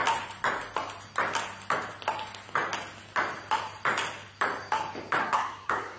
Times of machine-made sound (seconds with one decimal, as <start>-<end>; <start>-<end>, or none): 5.2-6.0

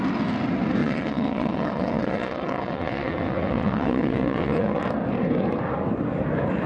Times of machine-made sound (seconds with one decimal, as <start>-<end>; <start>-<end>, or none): 0.8-4.8

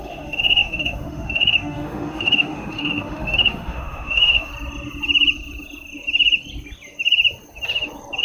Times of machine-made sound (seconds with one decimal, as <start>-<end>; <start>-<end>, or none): 0.0-4.5

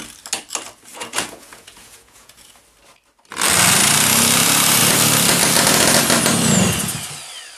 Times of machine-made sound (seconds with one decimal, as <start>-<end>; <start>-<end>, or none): 0.9-2.6

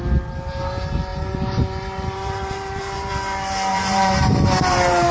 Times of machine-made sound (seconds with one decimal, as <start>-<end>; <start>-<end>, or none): 1.1-3.1; 3.7-5.1

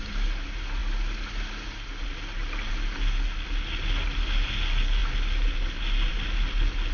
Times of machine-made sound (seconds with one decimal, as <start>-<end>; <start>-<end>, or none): none